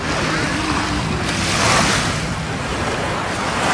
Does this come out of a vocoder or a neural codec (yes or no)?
no